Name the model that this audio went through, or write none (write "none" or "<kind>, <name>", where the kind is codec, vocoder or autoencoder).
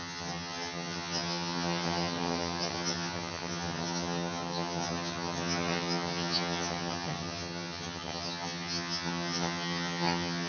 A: vocoder, HiFi-GAN